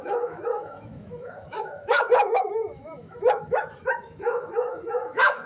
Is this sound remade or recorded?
remade